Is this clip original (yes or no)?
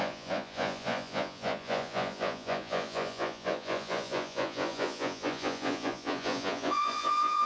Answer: no